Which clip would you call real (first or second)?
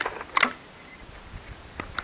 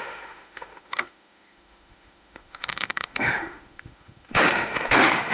first